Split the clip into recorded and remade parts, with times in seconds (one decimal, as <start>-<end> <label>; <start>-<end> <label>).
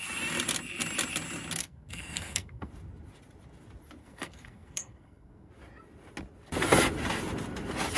0.0-1.6 recorded; 1.6-2.7 remade; 2.7-4.0 recorded; 4.0-5.5 remade; 5.5-8.0 recorded